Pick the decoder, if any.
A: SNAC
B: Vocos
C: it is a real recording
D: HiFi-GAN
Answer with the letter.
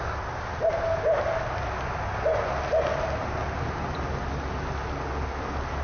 C